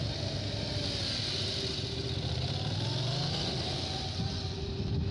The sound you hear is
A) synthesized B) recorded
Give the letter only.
B